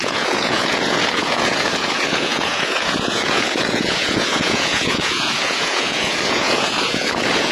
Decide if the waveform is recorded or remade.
remade